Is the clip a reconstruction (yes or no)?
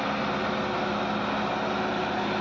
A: no